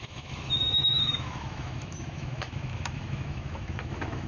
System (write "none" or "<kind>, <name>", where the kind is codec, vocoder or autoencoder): autoencoder, DAC-VAE